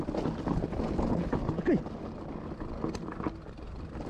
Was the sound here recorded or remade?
recorded